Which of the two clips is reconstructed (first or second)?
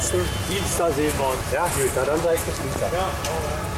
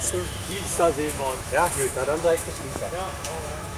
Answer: second